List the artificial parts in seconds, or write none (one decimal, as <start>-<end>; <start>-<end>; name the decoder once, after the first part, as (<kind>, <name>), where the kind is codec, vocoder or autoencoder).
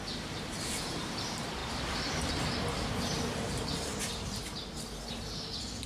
0.0-1.6 (vocoder, BigVGAN v2); 5.1-5.9